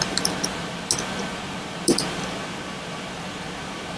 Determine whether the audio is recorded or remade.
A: recorded